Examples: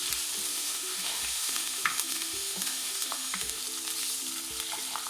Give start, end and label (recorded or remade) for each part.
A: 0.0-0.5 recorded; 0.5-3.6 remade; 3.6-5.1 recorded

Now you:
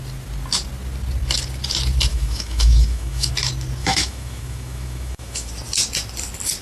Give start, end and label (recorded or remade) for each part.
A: 0.0-2.1 recorded; 2.1-3.3 remade; 3.3-3.8 recorded; 3.8-5.5 remade; 5.5-6.6 recorded

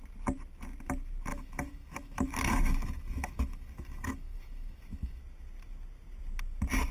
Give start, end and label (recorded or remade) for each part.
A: 0.0-1.3 recorded; 1.3-5.2 remade; 5.2-6.9 recorded

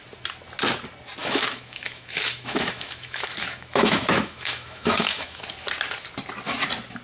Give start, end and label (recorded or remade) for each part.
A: 0.0-1.2 recorded; 1.2-5.4 remade; 5.4-7.0 recorded

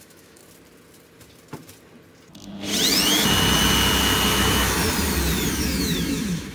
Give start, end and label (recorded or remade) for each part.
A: 0.0-0.4 remade; 0.4-4.3 recorded; 4.3-4.8 remade; 4.8-5.5 recorded; 5.5-6.5 remade

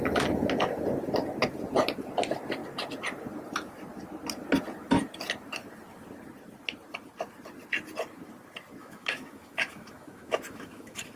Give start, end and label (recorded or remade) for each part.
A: 0.0-8.8 recorded; 8.8-11.2 remade

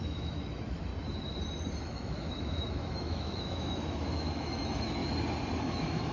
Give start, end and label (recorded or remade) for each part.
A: 0.0-0.9 remade; 0.9-1.8 recorded; 1.8-5.0 remade; 5.0-5.6 recorded; 5.6-6.1 remade